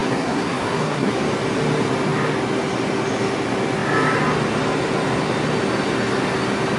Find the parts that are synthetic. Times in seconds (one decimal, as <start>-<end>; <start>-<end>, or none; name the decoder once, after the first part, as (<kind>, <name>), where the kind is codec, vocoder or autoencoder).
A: 0.0-1.1 (codec, SNAC)